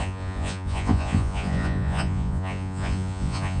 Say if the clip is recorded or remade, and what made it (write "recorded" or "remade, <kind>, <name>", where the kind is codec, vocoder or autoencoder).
remade, vocoder, Vocos